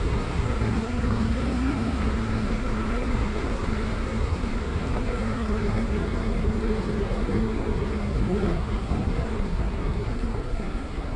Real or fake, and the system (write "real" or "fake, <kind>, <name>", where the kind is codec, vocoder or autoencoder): fake, codec, SNAC